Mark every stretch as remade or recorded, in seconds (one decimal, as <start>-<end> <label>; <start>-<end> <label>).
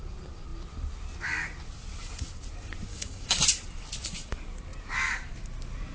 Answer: 0.0-2.9 recorded; 2.9-3.4 remade; 3.4-5.9 recorded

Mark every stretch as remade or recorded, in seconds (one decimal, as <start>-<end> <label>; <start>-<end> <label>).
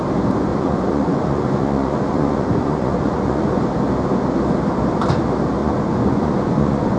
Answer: 0.0-0.5 recorded; 0.5-3.6 remade; 3.6-5.6 recorded; 5.6-7.0 remade